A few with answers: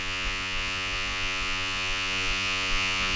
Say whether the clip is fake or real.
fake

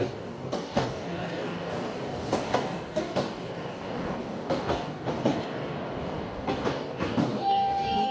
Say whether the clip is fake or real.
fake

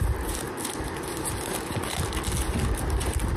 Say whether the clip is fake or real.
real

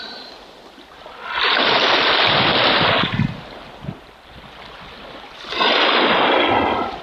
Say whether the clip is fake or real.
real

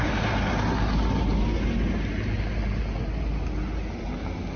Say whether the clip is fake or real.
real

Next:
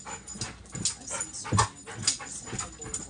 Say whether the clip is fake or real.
real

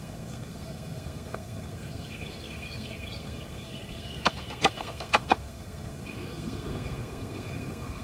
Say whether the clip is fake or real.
fake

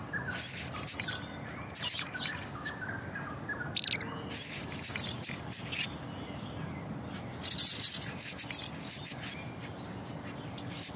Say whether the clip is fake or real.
real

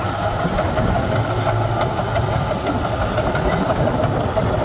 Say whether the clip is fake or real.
real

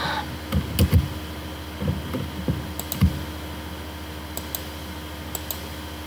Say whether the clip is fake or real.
real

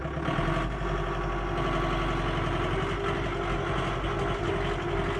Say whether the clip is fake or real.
real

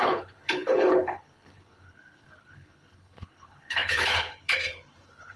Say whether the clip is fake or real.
fake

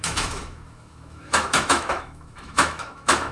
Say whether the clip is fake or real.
fake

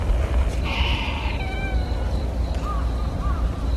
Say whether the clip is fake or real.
fake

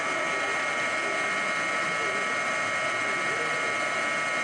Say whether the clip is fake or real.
real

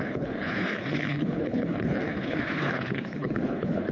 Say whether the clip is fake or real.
fake